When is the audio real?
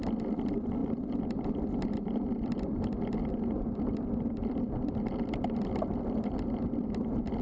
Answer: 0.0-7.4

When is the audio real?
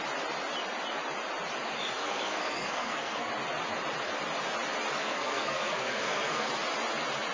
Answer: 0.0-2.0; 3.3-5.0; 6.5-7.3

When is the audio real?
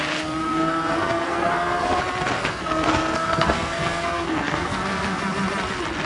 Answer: 0.0-0.4; 2.0-2.4; 5.2-6.1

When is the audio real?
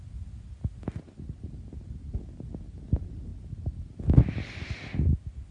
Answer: 0.0-3.3; 4.3-5.5